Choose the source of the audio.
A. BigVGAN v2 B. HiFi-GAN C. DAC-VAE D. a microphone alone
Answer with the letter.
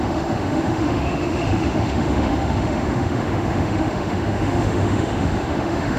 C